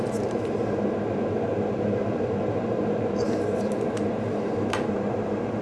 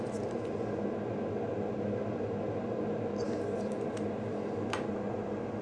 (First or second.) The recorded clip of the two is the second